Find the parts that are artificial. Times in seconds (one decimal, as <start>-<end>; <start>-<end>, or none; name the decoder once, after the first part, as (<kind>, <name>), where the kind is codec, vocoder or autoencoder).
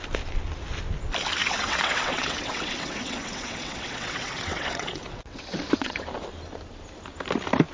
1.4-6.0 (vocoder, WaveNeXt)